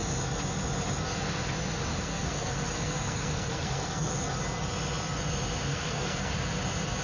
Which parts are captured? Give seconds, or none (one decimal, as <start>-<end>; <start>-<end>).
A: 0.0-1.9; 4.1-5.7; 6.3-7.0